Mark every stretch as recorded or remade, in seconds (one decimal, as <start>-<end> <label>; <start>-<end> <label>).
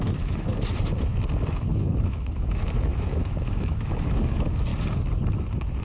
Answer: 0.0-0.5 remade; 0.5-1.7 recorded; 1.7-4.7 remade; 4.7-5.8 recorded